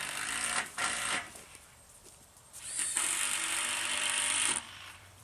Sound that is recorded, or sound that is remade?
remade